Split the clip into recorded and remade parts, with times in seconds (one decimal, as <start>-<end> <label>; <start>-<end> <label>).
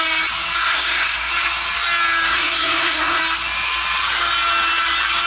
0.0-0.6 recorded; 0.6-1.3 remade; 1.3-2.3 recorded; 2.3-3.2 remade; 3.2-5.3 recorded